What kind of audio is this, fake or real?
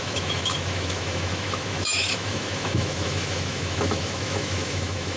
fake